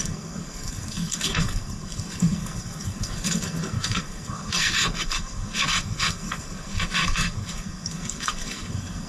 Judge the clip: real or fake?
fake